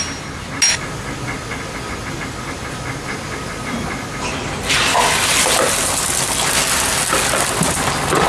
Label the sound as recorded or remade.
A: recorded